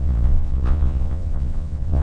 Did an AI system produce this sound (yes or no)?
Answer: yes